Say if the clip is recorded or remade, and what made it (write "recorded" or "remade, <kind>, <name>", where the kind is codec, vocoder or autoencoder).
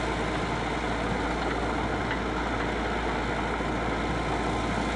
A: recorded